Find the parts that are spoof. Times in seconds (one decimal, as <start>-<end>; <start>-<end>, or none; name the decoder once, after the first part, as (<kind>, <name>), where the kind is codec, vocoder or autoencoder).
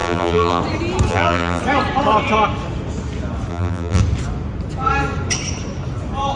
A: 0.0-0.6 (vocoder, BigVGAN v2); 1.1-1.6; 3.5-4.0